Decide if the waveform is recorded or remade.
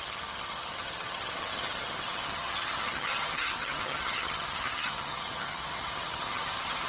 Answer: remade